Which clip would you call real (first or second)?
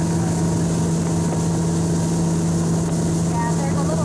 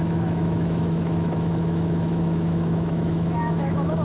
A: first